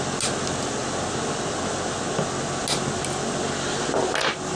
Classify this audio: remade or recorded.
recorded